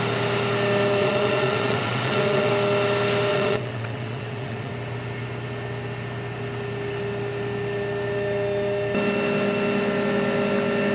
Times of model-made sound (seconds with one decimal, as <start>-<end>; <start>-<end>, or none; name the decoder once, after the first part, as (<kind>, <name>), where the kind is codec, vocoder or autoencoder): 1.0-2.5 (vocoder, WaveNeXt); 3.3-4.7